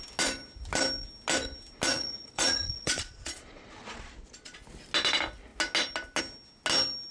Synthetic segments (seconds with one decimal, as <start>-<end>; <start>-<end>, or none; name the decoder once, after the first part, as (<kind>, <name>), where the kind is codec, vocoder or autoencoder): 1.9-4.6 (vocoder, Vocos)